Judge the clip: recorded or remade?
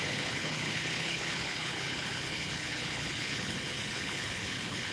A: remade